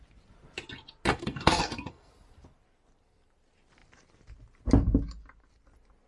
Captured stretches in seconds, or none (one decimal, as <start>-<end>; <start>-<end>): 0.0-1.1; 2.1-6.1

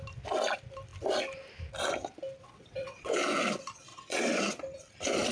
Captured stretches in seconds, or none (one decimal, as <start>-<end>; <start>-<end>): 0.0-2.4; 3.1-3.9; 4.5-5.3

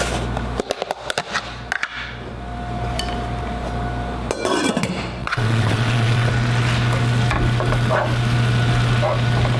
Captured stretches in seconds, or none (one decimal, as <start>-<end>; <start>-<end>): 0.0-5.2; 6.3-9.6

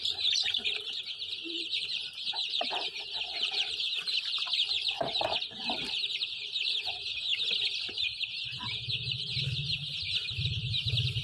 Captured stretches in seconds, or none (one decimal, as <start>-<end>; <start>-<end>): 7.3-9.4

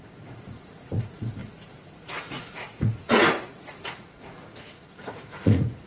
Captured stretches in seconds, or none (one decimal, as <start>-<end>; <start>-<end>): none